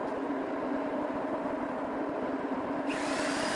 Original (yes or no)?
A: yes